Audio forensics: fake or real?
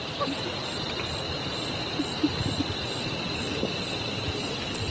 real